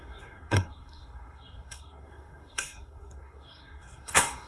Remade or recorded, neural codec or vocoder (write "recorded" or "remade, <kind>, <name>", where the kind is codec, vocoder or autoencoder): remade, codec, SNAC